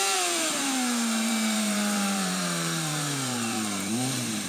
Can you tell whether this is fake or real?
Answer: fake